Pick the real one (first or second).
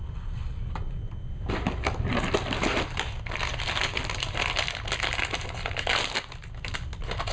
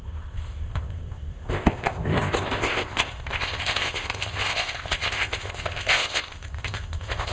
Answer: first